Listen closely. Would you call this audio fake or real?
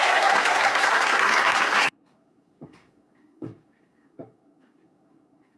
fake